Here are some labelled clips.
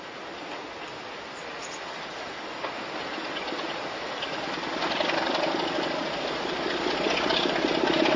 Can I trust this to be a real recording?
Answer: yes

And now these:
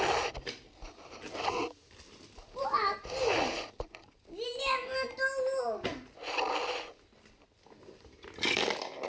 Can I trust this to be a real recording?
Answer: yes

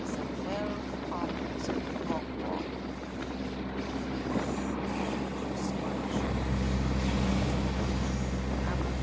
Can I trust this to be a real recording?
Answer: yes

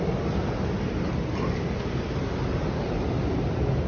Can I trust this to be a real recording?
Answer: yes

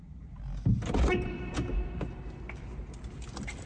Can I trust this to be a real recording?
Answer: yes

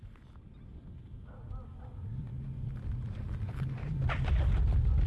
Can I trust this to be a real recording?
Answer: yes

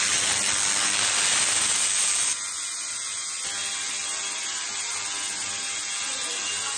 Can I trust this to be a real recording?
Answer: yes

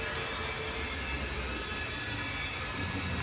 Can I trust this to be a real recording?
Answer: yes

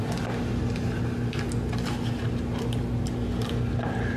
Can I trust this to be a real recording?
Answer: yes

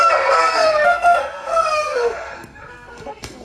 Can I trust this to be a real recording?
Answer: no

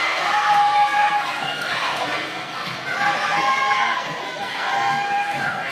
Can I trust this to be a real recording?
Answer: no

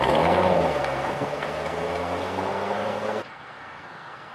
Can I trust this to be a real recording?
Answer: no